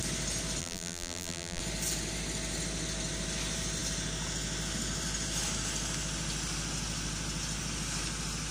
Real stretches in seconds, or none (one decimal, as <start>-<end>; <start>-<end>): 0.0-0.6; 1.6-8.5